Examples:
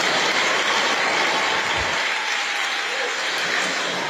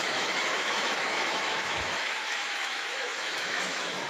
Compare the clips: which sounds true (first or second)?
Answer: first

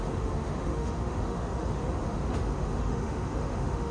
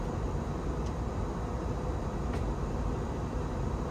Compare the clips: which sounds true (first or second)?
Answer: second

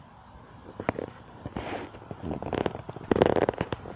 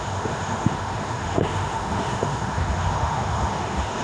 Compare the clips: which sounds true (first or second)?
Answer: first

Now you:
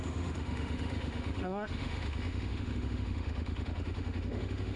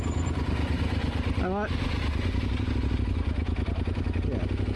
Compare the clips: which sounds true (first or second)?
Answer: second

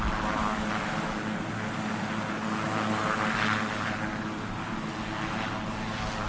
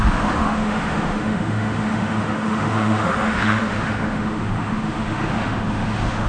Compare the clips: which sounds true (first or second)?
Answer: first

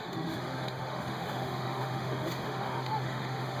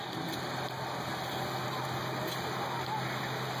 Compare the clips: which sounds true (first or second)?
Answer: second